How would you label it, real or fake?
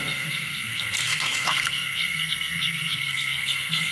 fake